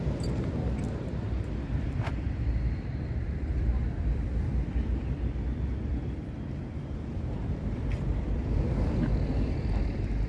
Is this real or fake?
fake